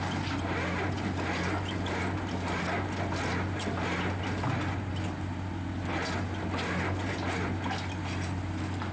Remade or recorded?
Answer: recorded